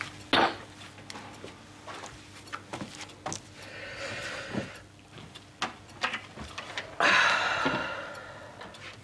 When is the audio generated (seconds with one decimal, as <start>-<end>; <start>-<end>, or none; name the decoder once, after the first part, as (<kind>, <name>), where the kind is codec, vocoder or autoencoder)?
none

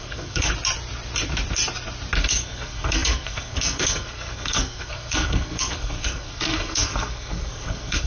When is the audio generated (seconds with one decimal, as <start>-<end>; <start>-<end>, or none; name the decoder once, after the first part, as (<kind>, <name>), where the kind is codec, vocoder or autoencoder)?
0.0-0.5 (codec, SNAC); 2.2-8.1

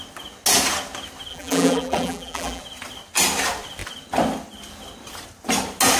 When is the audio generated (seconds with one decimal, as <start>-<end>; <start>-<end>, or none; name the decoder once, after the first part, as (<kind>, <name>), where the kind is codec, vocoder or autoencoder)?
1.3-2.6 (vocoder, BigVGAN v2)